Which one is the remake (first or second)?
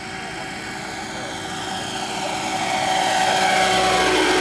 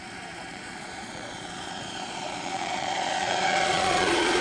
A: second